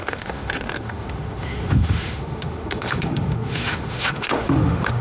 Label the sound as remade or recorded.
remade